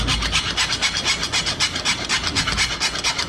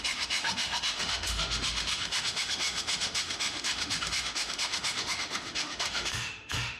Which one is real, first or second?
first